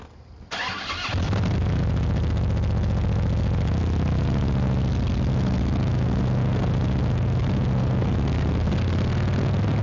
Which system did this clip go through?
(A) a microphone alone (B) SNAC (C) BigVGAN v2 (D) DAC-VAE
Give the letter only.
A